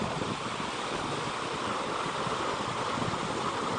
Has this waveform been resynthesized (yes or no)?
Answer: no